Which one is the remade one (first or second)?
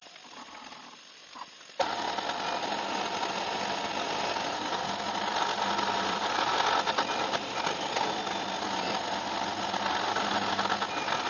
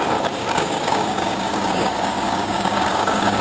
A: second